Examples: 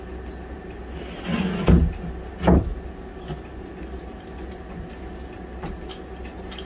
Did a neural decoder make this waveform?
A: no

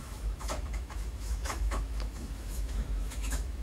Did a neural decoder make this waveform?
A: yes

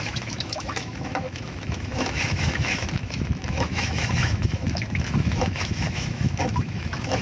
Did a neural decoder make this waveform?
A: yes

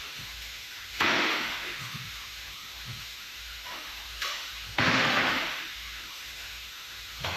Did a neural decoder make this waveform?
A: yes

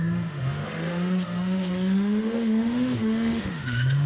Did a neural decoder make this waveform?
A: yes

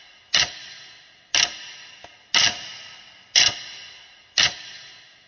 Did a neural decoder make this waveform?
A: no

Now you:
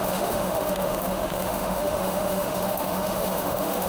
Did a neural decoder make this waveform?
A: yes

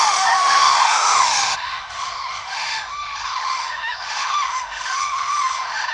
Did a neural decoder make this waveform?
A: yes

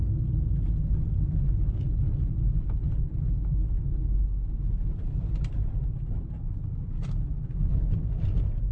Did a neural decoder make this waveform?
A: no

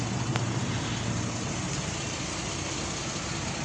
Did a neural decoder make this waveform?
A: no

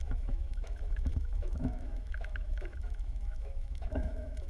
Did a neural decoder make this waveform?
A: yes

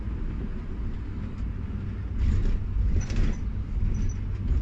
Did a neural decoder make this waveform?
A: no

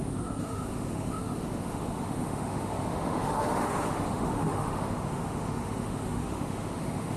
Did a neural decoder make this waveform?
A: yes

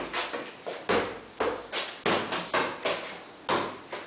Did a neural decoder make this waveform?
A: no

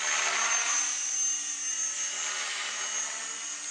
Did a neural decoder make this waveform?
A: no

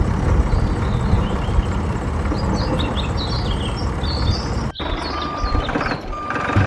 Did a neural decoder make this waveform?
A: no